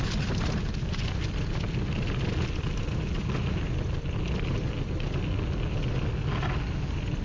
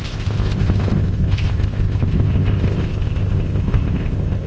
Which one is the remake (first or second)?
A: second